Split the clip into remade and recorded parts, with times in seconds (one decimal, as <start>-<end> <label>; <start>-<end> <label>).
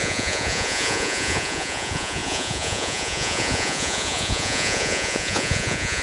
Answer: 0.0-6.0 remade